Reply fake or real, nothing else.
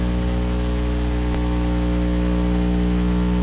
real